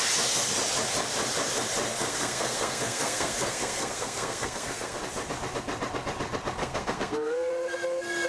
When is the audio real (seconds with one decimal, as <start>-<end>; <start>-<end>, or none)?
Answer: 0.0-1.9; 5.0-6.6; 7.5-8.3